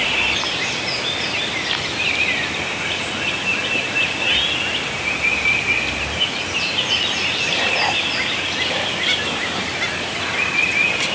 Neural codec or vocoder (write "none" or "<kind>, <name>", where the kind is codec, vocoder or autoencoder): none